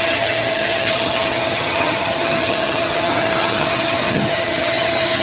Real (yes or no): no